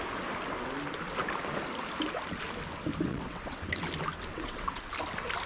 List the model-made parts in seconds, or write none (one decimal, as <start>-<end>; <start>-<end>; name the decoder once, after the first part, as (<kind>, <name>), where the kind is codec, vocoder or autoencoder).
3.1-3.8 (vocoder, WaveNeXt); 4.3-4.8

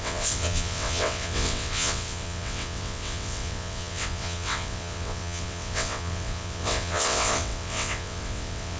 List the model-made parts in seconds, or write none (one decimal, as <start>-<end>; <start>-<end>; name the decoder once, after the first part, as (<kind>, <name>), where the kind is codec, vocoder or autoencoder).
0.0-8.8 (vocoder, WaveNeXt)

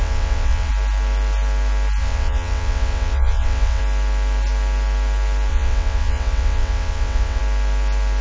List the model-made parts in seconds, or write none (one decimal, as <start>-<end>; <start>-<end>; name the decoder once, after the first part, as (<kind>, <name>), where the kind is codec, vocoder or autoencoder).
0.0-0.7 (vocoder, WaveNeXt); 2.0-3.8; 5.5-7.4

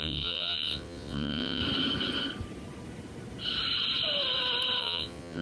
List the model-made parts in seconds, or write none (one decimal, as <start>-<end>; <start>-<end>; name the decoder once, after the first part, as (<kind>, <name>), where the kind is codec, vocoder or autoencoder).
0.0-1.6 (vocoder, WaveNeXt); 4.8-5.4